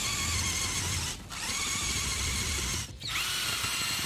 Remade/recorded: remade